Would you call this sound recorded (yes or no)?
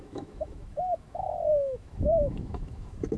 no